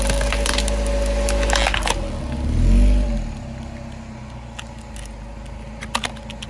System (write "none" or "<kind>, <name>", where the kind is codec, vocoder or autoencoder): none